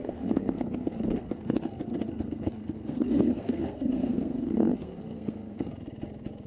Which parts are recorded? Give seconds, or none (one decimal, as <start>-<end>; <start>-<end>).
5.7-6.5